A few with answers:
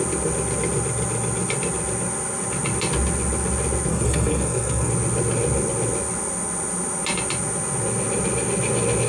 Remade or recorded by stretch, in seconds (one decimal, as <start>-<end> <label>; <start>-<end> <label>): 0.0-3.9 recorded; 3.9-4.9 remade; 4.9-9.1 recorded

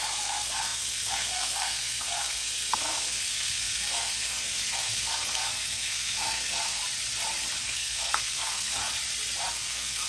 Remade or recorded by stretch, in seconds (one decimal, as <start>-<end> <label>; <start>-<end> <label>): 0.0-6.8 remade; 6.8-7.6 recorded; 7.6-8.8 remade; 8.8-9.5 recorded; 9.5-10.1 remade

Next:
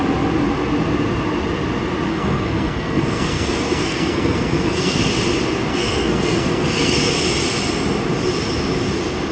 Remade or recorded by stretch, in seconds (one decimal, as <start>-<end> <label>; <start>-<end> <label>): 0.0-2.1 recorded; 2.1-5.0 remade; 5.0-5.7 recorded; 5.7-7.1 remade; 7.1-9.3 recorded

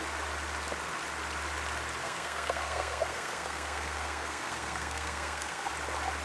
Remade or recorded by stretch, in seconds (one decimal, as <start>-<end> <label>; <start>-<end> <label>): 0.0-2.0 recorded; 2.0-5.7 remade; 5.7-6.2 recorded

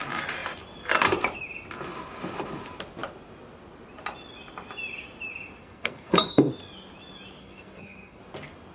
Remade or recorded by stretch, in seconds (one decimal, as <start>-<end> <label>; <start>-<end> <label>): 0.0-5.6 recorded; 5.6-6.5 remade; 6.5-7.4 recorded; 7.4-8.2 remade; 8.2-8.7 recorded